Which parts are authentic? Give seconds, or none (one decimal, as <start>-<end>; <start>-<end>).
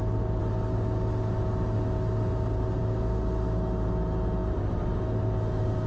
0.0-5.9